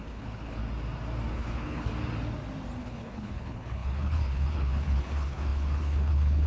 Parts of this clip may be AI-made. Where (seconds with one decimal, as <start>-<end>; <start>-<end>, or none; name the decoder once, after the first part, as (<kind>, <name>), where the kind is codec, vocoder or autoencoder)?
0.0-0.6 (codec, HILCodec); 1.3-1.9; 2.8-6.5